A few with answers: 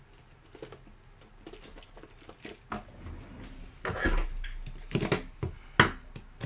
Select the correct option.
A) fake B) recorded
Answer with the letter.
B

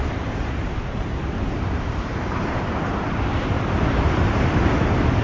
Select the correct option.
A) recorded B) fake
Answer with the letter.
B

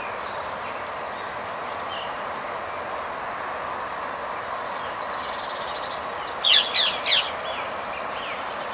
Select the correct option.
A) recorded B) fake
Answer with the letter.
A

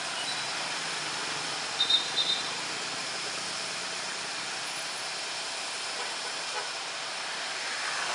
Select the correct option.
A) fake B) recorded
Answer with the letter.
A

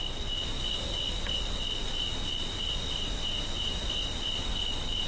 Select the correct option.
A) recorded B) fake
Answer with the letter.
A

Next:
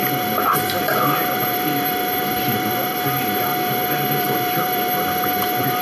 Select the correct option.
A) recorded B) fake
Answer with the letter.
B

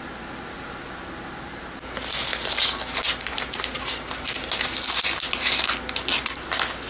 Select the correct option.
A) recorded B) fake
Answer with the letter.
A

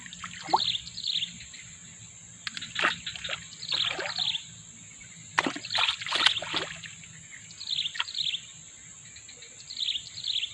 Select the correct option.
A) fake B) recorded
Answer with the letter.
B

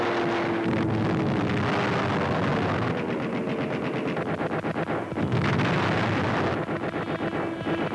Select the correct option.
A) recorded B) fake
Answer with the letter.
A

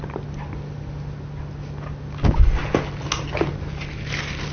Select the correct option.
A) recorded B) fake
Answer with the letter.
A